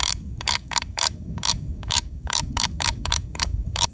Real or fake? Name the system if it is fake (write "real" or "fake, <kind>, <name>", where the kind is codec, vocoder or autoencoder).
fake, codec, DAC